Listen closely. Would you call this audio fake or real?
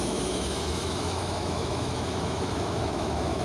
fake